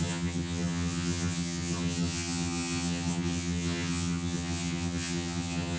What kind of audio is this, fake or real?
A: fake